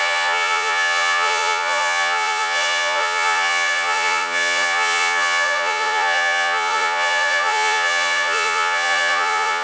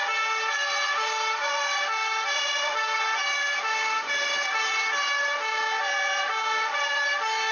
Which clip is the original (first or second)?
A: second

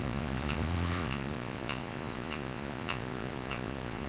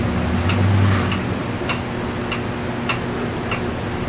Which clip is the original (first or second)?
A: second